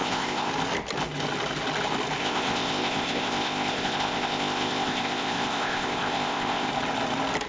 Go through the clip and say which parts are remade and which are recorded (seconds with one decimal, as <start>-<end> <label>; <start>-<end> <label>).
0.0-0.5 remade; 0.5-2.2 recorded; 2.2-6.7 remade; 6.7-7.5 recorded